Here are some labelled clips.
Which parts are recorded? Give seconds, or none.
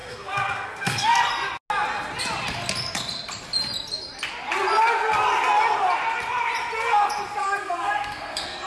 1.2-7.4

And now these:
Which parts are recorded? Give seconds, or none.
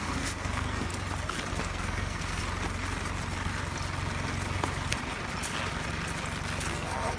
0.9-1.5; 2.4-6.7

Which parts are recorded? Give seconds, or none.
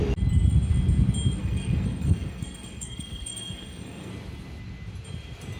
0.0-1.4; 4.1-5.6